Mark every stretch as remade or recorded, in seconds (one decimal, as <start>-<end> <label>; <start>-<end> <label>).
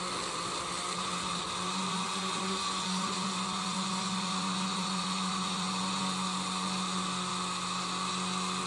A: 0.0-1.9 recorded; 1.9-6.0 remade; 6.0-8.7 recorded